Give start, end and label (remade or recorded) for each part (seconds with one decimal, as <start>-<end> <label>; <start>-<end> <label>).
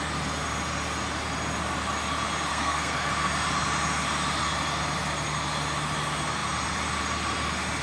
0.0-2.5 recorded; 2.5-3.1 remade; 3.1-7.8 recorded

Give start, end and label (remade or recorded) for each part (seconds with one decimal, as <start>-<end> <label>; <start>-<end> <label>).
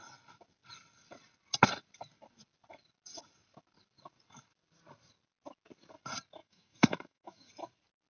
0.0-6.4 recorded; 6.4-7.5 remade; 7.5-8.1 recorded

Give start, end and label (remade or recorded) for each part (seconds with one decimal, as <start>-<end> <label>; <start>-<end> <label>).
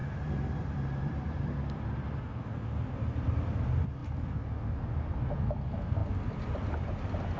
0.0-3.3 remade; 3.3-6.0 recorded; 6.0-7.4 remade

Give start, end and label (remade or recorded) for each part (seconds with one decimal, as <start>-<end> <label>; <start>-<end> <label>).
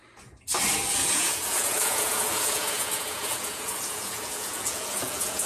0.0-0.9 recorded; 0.9-5.5 remade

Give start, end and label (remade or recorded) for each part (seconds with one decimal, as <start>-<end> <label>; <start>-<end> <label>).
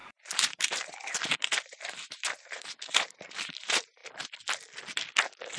0.0-4.0 remade; 4.0-5.6 recorded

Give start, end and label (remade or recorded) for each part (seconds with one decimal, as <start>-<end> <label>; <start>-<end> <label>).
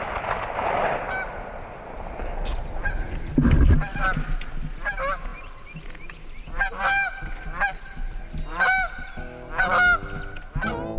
0.0-5.3 recorded; 5.3-6.8 remade; 6.8-11.0 recorded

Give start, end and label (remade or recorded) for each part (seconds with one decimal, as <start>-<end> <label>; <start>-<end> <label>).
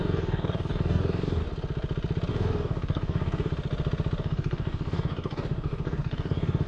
0.0-1.4 remade; 1.4-2.3 recorded; 2.3-3.5 remade; 3.5-4.2 recorded; 4.2-6.7 remade